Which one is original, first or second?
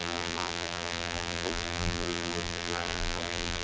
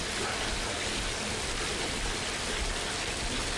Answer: second